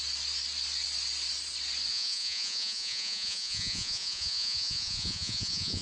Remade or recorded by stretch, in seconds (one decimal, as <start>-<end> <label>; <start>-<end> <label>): 0.0-1.9 recorded; 1.9-5.8 remade